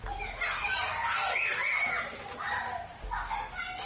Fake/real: real